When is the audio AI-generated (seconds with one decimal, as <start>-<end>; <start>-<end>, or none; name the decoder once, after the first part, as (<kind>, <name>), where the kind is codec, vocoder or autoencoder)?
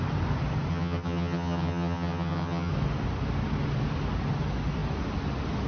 0.7-2.7 (vocoder, HiFi-GAN)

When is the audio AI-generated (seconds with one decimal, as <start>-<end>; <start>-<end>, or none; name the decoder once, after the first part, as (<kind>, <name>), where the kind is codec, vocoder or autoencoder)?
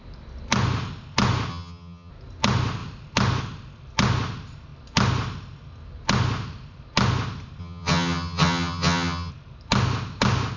1.5-2.1 (vocoder, HiFi-GAN); 7.6-9.3